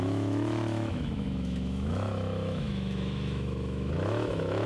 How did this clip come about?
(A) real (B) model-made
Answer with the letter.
B